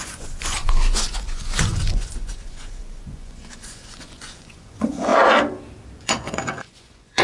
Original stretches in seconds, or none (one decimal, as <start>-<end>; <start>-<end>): 5.1-6.0